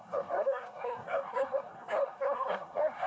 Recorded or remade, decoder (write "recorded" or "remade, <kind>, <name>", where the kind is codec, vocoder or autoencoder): remade, codec, SNAC